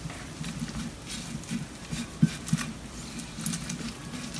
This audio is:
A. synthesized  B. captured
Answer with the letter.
B